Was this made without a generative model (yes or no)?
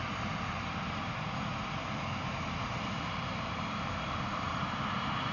no